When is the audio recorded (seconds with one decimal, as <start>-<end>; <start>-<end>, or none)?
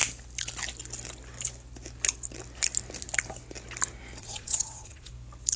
0.0-4.2; 5.1-5.6